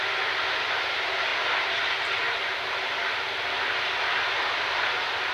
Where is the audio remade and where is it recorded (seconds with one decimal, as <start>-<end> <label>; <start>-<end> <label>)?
0.0-5.3 recorded